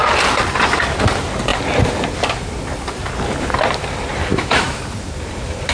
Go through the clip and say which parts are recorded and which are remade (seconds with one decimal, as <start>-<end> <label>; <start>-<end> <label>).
0.0-4.3 recorded; 4.3-4.8 remade; 4.8-5.7 recorded